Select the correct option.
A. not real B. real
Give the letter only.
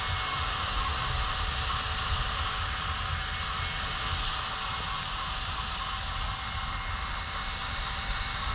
B